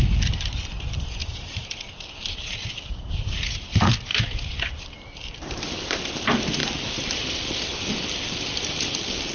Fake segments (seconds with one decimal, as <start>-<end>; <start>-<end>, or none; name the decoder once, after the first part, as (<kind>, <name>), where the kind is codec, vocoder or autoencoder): 1.2-3.2 (vocoder, BigVGAN v2); 4.1-4.7; 6.6-7.3